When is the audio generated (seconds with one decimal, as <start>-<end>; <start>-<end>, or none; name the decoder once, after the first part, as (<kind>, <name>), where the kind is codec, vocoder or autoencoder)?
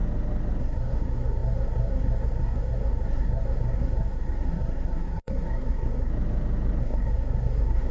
0.6-6.1 (codec, SNAC); 6.8-7.9